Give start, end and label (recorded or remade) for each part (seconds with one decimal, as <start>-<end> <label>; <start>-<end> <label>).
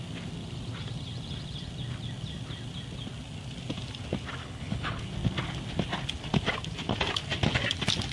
0.0-4.4 recorded; 4.4-5.0 remade; 5.0-8.1 recorded